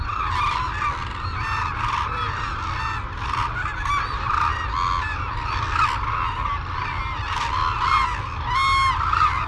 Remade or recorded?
recorded